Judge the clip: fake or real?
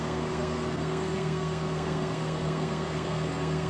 fake